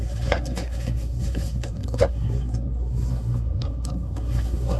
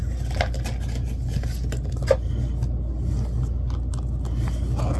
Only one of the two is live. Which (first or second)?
second